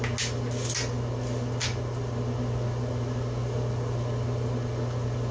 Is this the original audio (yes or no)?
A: yes